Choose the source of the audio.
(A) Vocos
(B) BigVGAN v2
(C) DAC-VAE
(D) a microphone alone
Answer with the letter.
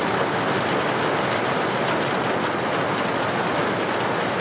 D